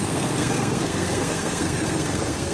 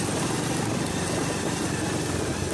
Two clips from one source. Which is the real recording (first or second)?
second